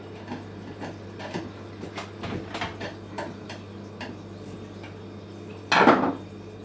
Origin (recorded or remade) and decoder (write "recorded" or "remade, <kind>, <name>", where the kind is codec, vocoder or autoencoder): recorded